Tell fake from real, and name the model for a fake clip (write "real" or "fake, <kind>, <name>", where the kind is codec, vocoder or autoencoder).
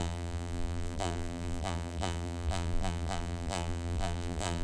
fake, vocoder, BigVGAN v2